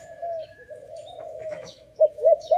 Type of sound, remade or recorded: remade